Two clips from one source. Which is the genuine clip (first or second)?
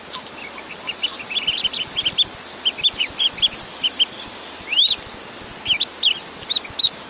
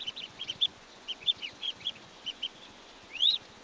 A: first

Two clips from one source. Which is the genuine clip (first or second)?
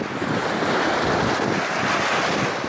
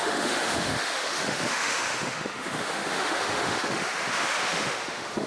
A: first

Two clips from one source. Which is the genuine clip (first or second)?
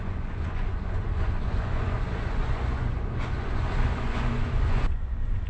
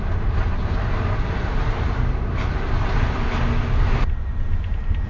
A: second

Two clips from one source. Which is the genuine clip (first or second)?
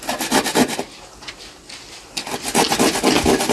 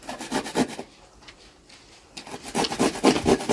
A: first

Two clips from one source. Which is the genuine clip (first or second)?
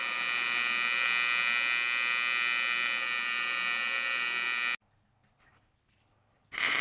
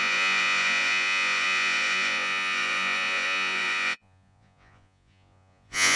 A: first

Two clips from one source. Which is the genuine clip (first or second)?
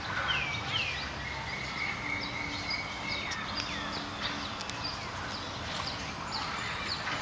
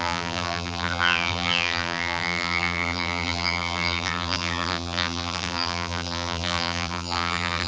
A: first